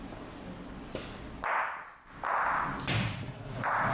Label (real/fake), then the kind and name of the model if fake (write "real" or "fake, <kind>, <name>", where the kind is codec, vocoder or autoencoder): real